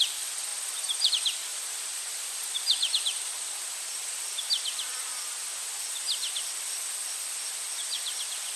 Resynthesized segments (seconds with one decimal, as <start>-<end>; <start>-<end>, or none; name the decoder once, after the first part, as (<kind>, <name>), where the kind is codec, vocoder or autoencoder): 1.5-3.6 (vocoder, BigVGAN v2)

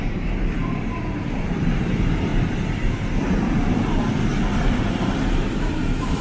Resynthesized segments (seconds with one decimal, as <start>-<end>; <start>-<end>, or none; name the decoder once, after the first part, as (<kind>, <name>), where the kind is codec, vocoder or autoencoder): 0.0-2.3 (vocoder, BigVGAN v2); 3.2-6.2

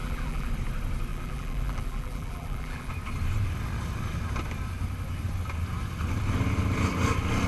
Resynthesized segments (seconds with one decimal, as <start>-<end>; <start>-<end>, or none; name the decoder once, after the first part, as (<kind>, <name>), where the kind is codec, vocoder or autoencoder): 0.0-0.5 (vocoder, BigVGAN v2); 1.1-2.9

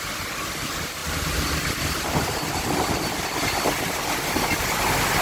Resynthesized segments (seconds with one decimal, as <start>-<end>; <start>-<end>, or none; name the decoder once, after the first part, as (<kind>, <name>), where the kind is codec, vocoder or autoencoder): 1.0-4.1 (vocoder, BigVGAN v2)

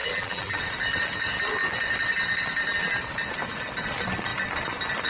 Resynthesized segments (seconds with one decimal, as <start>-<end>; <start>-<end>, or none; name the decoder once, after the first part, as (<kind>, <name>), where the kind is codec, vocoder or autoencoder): 0.0-0.6 (vocoder, BigVGAN v2)

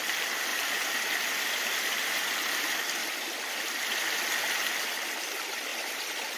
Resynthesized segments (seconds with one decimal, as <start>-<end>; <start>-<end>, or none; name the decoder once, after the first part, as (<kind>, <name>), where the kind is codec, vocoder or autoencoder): 5.7-6.4 (vocoder, BigVGAN v2)